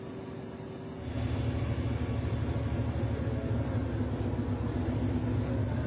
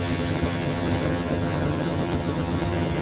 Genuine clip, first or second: first